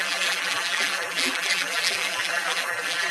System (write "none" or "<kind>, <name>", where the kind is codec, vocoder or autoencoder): vocoder, BigVGAN v2